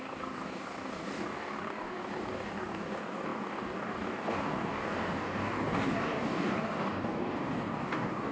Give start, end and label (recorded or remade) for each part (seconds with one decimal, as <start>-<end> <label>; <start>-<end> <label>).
0.0-8.3 remade